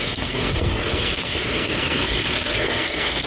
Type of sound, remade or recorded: remade